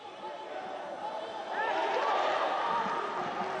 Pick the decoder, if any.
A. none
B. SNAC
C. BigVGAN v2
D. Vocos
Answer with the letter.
A